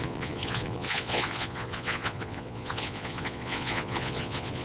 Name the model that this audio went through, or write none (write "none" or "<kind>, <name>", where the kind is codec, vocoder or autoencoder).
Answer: vocoder, Vocos